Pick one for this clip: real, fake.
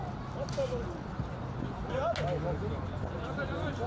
real